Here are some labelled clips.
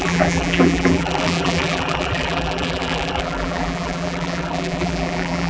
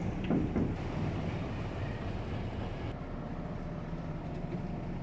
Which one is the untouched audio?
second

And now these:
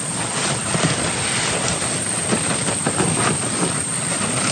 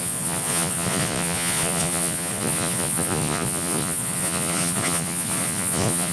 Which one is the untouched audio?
first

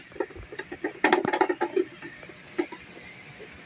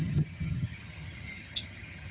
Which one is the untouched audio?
first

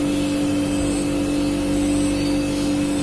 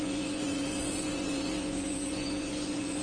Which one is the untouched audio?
first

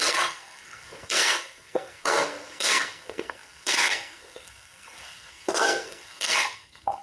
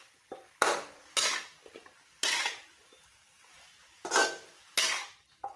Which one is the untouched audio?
second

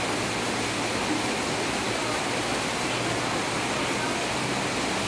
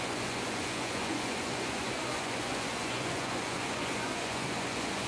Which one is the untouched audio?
first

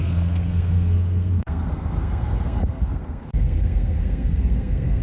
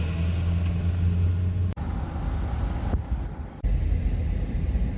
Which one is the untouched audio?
second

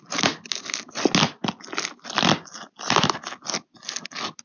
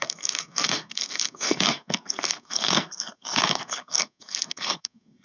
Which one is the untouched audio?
first